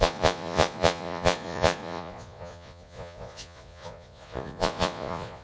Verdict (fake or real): fake